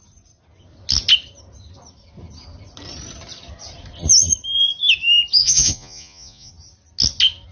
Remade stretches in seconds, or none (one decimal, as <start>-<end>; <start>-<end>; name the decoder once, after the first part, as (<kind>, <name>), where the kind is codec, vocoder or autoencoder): 5.4-6.5 (vocoder, Vocos)